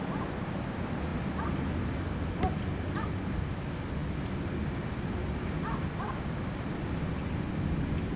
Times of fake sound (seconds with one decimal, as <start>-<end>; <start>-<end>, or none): none